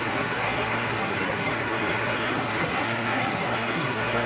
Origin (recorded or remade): remade